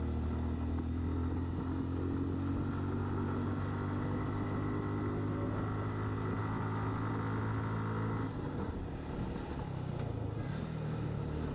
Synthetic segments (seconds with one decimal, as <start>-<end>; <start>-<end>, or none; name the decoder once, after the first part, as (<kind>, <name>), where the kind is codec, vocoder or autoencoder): none

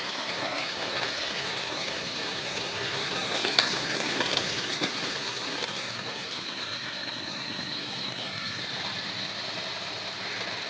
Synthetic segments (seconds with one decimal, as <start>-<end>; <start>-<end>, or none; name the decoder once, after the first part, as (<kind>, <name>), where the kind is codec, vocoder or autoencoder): 0.0-8.6 (codec, SNAC)